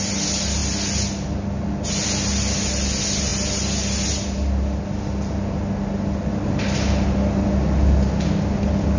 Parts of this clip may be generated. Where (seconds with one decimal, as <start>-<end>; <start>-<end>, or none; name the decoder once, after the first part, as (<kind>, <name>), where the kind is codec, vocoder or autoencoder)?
none